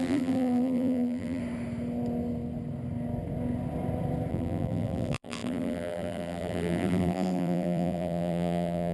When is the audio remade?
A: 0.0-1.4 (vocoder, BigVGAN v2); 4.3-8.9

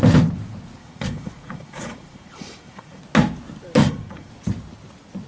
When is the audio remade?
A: 0.8-3.0 (vocoder, Vocos); 3.8-4.3

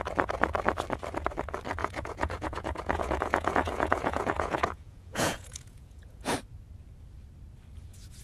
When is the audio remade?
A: 1.8-6.3 (vocoder, Vocos)

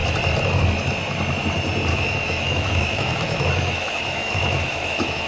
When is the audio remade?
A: 1.9-5.3 (autoencoder, DAC-VAE)

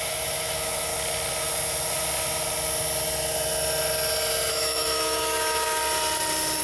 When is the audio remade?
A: 0.0-0.9 (autoencoder, DAC-VAE); 4.5-5.8

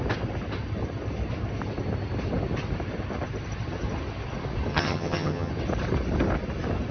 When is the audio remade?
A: 4.7-5.5 (vocoder, HiFi-GAN)